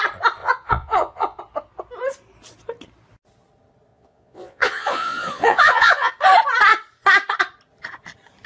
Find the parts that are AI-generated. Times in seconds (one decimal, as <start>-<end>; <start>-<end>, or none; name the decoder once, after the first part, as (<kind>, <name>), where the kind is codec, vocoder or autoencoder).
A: 0.4-1.4 (vocoder, Vocos); 3.9-6.1